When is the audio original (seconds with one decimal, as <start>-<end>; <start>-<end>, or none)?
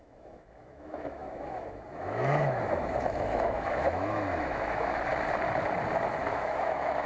5.1-6.2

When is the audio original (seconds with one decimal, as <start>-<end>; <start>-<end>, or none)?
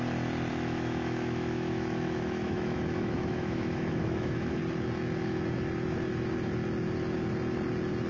0.0-0.5; 4.6-8.1